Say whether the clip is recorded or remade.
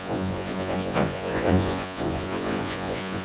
remade